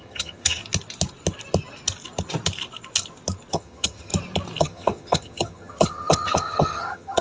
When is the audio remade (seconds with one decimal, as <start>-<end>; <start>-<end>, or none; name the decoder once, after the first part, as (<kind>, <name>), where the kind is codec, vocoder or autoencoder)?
0.0-0.6 (vocoder, HiFi-GAN); 3.5-4.1; 4.6-7.2